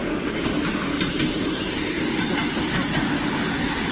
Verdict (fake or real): real